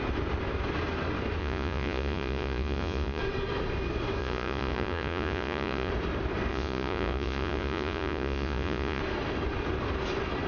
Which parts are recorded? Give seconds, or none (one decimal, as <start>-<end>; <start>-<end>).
0.0-1.4; 3.2-4.2; 5.9-6.5; 9.0-10.5